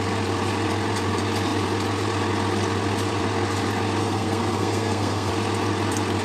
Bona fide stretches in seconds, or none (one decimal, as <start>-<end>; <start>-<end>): 0.0-4.0; 5.3-6.2